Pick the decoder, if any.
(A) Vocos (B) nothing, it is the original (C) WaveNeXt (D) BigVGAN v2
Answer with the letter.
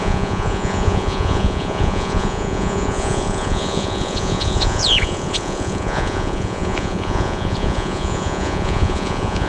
A